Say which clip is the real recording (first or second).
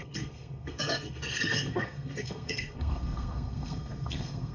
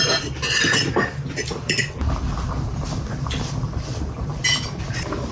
second